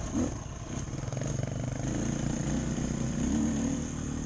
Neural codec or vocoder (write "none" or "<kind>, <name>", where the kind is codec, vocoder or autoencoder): none